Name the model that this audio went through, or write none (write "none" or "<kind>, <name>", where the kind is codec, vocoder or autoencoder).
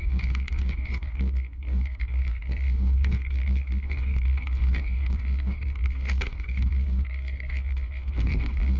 codec, DAC